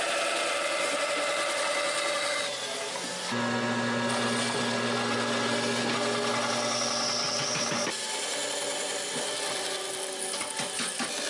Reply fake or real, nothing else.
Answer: real